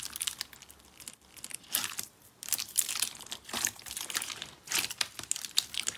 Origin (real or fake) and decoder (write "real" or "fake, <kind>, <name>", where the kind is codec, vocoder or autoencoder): real